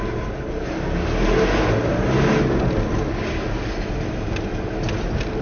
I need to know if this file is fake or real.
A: real